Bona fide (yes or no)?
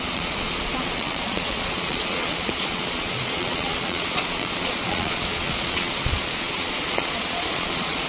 no